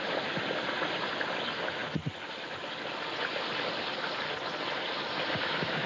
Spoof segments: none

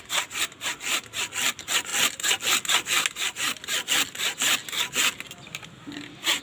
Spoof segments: none

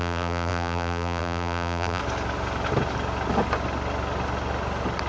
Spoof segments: 0.0-2.0 (vocoder, BigVGAN v2)

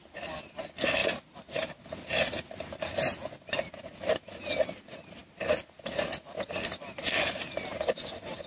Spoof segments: 1.0-1.8 (vocoder, BigVGAN v2)